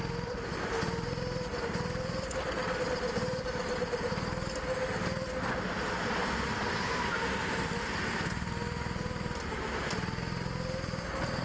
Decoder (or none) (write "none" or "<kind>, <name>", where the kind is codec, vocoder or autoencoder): none